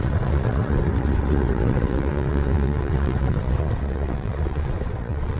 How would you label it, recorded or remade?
remade